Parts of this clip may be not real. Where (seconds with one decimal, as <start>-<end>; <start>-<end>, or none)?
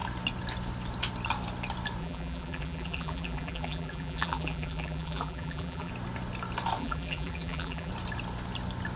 2.0-5.9; 6.8-7.9